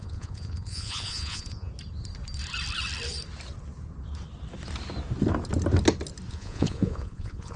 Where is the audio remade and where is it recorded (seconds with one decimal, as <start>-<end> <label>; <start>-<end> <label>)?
0.0-1.7 remade; 1.7-6.3 recorded; 6.3-7.6 remade